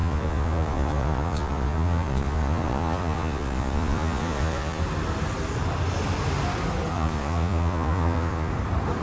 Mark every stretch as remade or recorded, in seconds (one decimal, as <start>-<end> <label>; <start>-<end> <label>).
0.0-4.8 remade; 4.8-6.9 recorded; 6.9-8.5 remade; 8.5-9.0 recorded